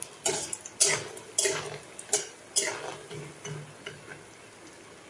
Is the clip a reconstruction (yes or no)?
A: no